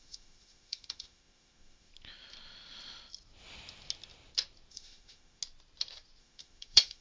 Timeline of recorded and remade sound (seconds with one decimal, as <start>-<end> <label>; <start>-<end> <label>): 0.0-1.9 remade; 1.9-4.7 recorded; 4.7-5.4 remade; 5.4-6.2 recorded; 6.2-7.0 remade